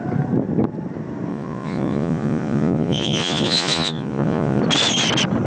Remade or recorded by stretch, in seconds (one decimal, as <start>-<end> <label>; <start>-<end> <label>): 0.0-1.3 recorded; 1.3-4.6 remade; 4.6-5.5 recorded